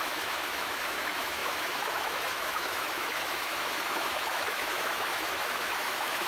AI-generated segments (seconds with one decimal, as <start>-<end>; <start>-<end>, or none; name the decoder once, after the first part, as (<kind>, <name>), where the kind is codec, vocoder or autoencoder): 0.0-6.3 (autoencoder, DAC-VAE)